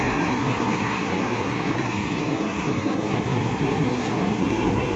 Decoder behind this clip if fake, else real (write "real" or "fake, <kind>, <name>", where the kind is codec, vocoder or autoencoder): fake, codec, SNAC